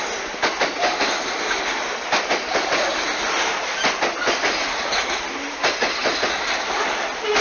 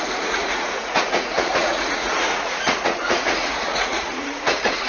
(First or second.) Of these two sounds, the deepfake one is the second